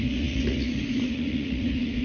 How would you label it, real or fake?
fake